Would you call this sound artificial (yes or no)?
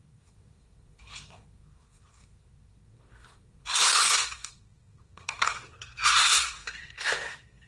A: yes